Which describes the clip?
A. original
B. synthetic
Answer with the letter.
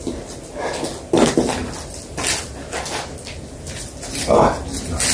A